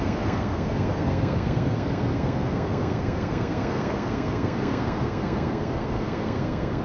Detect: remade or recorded remade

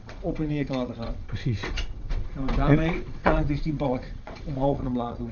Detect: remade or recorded remade